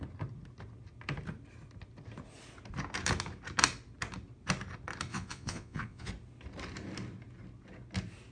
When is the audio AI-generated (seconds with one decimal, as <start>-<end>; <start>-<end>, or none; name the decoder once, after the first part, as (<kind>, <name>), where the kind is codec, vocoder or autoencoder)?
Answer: 5.1-6.1 (vocoder, Vocos)